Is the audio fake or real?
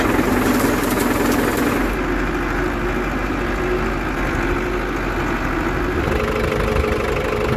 real